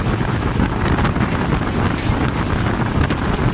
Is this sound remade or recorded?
recorded